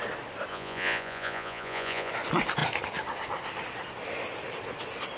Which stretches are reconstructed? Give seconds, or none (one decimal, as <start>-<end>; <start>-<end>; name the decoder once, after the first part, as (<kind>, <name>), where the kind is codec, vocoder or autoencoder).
0.5-2.1 (vocoder, Vocos)